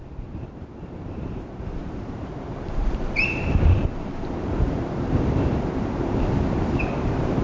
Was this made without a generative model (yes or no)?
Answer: no